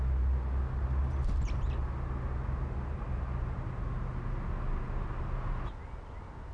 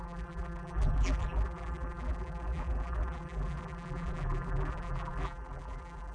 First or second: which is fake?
second